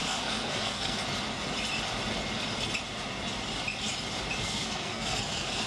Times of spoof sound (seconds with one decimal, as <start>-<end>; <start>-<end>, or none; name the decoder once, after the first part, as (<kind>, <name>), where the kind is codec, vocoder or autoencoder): 0.0-1.0 (codec, SNAC); 4.4-5.7